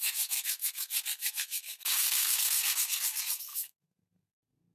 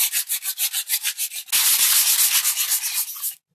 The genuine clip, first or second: second